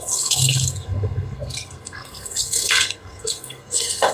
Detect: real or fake fake